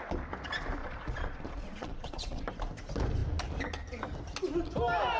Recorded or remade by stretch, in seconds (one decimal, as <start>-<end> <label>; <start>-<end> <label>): 0.0-0.8 recorded; 0.8-2.4 remade; 2.4-5.2 recorded